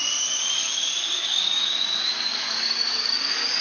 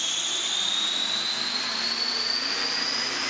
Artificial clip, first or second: first